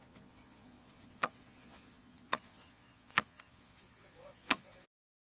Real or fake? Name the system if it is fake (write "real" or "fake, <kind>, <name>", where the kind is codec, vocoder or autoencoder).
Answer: fake, vocoder, Vocos